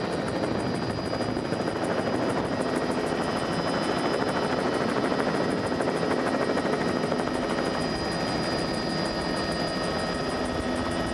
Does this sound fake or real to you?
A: real